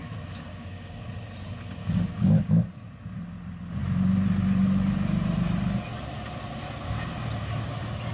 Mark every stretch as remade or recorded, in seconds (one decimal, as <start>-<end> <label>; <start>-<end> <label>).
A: 0.0-0.5 recorded; 0.5-1.0 remade; 1.0-1.8 recorded; 1.8-2.5 remade; 2.5-8.1 recorded